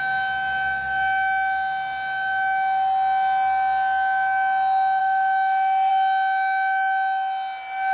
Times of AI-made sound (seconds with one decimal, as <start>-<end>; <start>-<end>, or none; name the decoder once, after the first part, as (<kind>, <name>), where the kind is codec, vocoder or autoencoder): 5.0-5.9 (autoencoder, DAC-VAE)